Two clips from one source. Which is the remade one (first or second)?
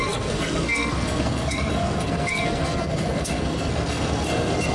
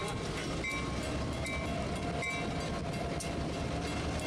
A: first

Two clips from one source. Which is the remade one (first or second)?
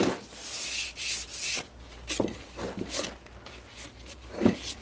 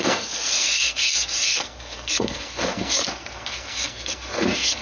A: second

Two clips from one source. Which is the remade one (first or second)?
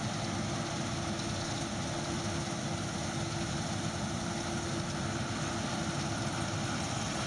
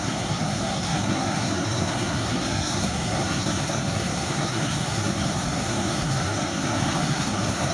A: second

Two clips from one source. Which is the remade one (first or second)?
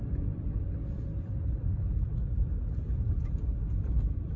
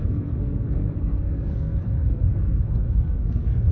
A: second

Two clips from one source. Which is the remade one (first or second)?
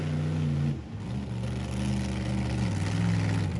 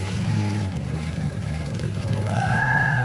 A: second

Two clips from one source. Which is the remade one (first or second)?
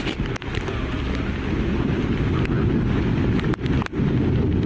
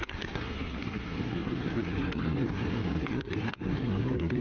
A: second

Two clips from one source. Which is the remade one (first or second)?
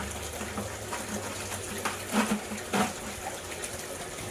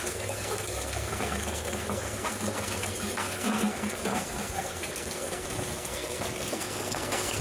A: second